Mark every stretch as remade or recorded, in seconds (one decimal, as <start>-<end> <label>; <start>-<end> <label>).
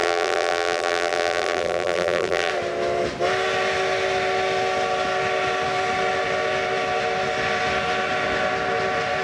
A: 0.0-2.5 remade; 2.5-9.2 recorded